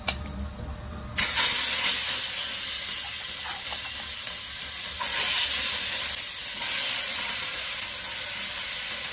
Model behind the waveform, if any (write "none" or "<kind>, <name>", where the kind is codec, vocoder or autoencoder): none